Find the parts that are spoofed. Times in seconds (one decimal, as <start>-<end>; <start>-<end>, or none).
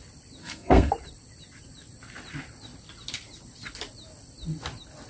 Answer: 0.4-0.9